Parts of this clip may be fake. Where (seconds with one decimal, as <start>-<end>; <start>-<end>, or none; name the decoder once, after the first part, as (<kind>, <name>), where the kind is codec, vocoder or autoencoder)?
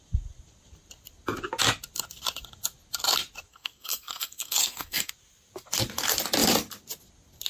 3.5-5.1 (codec, SNAC)